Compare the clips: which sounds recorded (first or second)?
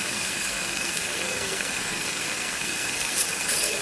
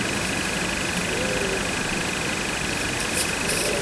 second